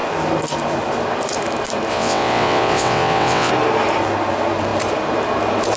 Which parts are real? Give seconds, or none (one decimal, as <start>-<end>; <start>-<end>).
0.0-1.9; 3.5-5.8